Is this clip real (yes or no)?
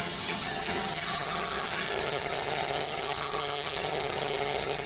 no